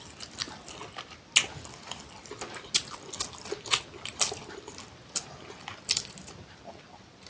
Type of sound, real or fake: real